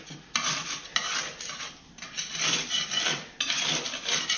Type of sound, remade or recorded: recorded